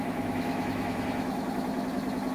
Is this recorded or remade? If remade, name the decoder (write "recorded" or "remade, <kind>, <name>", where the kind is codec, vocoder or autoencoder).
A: remade, autoencoder, DAC-VAE